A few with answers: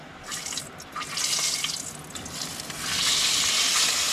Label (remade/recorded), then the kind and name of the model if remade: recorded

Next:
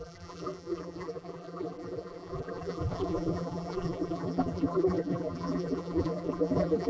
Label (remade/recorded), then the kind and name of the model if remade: remade, vocoder, BigVGAN v2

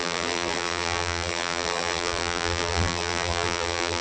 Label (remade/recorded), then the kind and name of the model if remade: remade, vocoder, BigVGAN v2